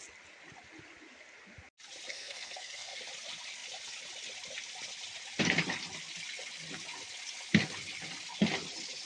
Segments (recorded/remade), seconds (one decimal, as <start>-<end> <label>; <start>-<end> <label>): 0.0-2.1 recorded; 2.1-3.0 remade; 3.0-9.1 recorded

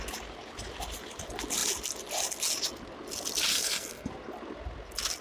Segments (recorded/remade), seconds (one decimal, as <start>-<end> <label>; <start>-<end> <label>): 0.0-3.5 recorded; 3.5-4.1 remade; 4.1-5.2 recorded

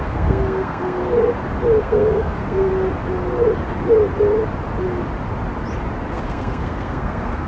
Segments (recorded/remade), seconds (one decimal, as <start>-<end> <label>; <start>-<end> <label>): 0.0-1.0 remade; 1.0-1.8 recorded; 1.8-2.7 remade; 2.7-6.1 recorded; 6.1-7.5 remade

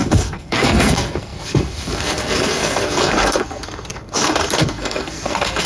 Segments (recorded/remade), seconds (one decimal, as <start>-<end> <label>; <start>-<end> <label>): 0.0-5.7 remade

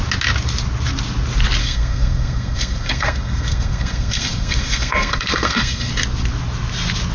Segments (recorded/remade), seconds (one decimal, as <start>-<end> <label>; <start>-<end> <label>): 0.0-1.6 recorded; 1.6-5.9 remade; 5.9-7.1 recorded

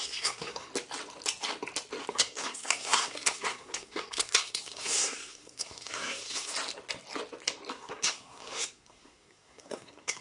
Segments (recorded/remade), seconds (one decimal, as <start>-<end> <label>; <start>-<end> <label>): 0.0-0.7 remade; 0.7-2.1 recorded; 2.1-6.5 remade; 6.5-7.7 recorded; 7.7-10.2 remade

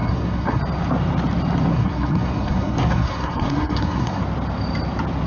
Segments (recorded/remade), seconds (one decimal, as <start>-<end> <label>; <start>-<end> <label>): 0.0-0.6 remade; 0.6-1.7 recorded; 1.7-4.2 remade; 4.2-5.3 recorded